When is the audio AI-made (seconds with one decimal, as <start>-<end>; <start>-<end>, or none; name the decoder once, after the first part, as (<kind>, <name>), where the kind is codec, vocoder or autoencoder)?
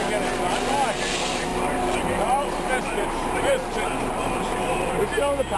1.5-4.9 (vocoder, BigVGAN v2)